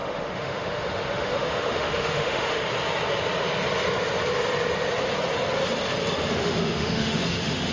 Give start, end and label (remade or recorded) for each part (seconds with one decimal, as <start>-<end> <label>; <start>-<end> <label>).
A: 0.0-2.6 remade; 2.6-6.3 recorded; 6.3-7.7 remade